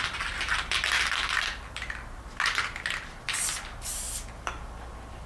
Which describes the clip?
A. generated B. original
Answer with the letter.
B